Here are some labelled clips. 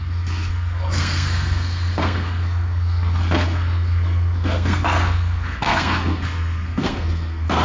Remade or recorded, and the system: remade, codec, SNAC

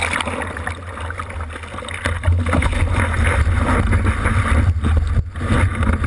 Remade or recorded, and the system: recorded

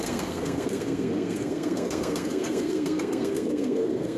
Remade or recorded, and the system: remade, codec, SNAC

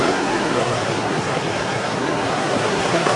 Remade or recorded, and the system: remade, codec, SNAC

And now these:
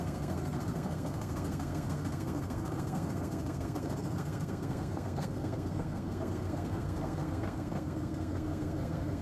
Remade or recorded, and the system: remade, codec, SNAC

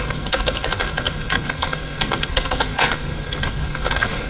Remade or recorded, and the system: remade, codec, SNAC